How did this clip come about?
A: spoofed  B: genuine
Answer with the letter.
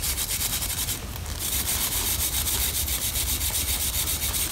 A